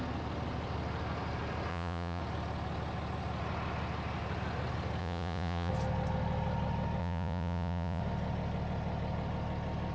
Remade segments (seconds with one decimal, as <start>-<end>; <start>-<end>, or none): 1.7-2.2; 5.0-5.7; 7.0-8.0